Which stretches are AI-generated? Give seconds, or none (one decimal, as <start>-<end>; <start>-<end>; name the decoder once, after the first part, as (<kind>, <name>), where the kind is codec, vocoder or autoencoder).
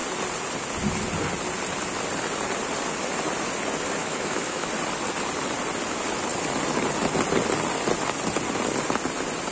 4.0-4.7 (autoencoder, DAC-VAE)